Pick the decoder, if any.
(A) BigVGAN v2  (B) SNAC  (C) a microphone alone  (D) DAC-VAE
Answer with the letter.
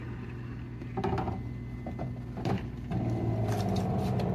C